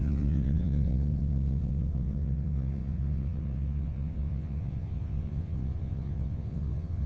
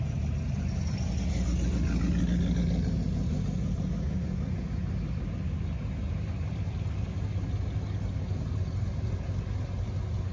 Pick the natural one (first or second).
second